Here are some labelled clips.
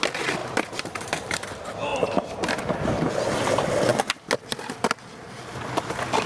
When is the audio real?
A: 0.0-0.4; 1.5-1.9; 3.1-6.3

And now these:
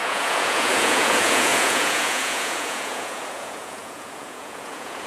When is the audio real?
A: none